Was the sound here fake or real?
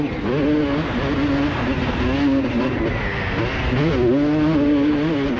real